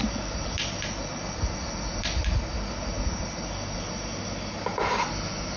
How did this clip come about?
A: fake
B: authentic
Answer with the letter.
B